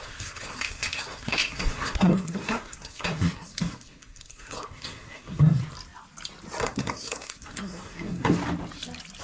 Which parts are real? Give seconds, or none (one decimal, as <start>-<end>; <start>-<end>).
5.6-6.6; 8.4-9.2